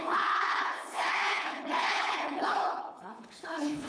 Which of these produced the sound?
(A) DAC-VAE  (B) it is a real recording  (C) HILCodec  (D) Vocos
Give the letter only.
C